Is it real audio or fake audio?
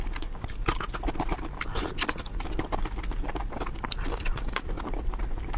real